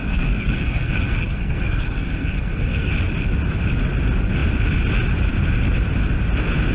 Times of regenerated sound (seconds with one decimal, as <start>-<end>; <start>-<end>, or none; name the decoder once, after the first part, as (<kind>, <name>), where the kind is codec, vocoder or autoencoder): 0.0-2.9 (codec, SNAC)